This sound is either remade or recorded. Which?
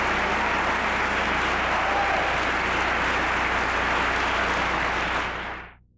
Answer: recorded